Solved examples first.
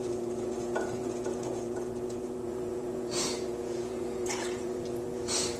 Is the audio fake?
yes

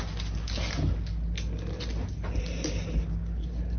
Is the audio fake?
no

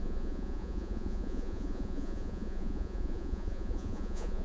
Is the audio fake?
yes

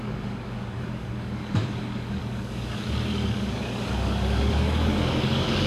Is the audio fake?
yes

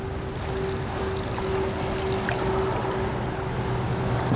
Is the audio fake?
no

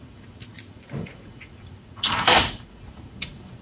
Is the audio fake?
yes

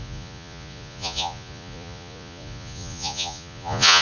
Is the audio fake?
yes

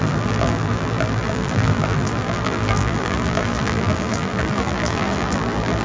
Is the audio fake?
yes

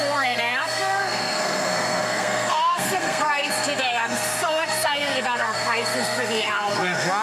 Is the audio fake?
yes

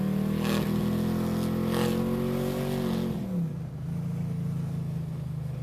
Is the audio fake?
no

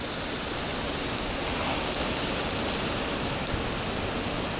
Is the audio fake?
no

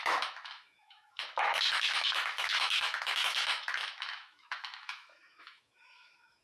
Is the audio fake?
yes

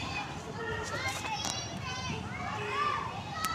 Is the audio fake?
yes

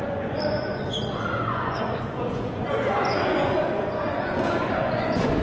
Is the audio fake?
yes